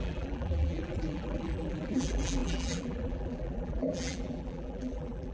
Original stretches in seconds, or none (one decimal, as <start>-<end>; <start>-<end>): none